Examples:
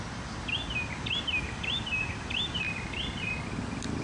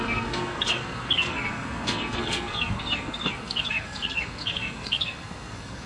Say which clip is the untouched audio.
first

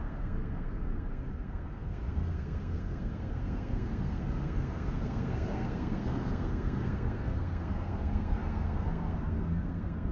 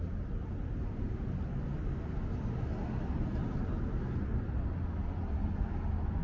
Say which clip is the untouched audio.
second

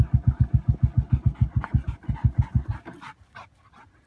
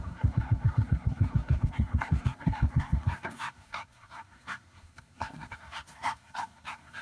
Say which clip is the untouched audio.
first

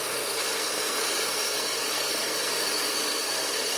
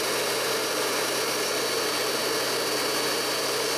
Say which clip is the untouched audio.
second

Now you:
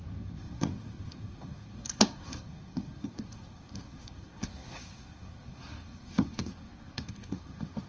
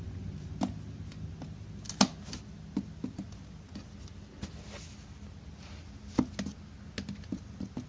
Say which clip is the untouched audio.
second